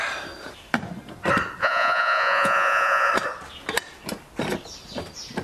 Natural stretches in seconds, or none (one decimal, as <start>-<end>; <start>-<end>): 0.0-1.6; 3.1-5.4